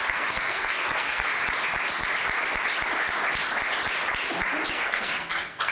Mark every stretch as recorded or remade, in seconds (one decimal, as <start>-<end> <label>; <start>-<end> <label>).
0.0-1.3 remade; 1.3-4.7 recorded; 4.7-5.7 remade